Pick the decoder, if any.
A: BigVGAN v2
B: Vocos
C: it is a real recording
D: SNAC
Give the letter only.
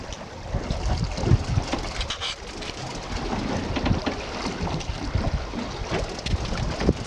C